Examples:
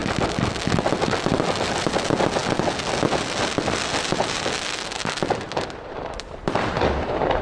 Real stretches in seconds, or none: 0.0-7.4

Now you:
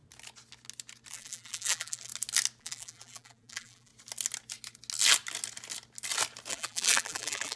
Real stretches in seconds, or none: 0.0-1.1; 2.1-2.6; 3.9-6.5

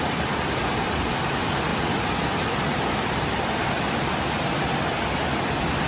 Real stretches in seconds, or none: 0.0-5.9

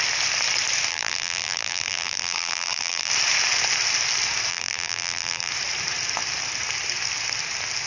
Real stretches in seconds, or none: 0.0-0.9; 3.1-4.5; 5.5-7.9

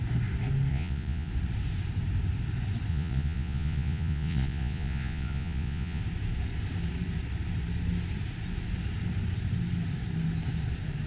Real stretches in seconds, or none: 0.0-0.7; 1.3-2.9; 6.0-11.1

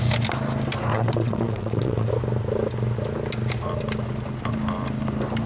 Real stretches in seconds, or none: 0.0-0.9; 2.1-5.5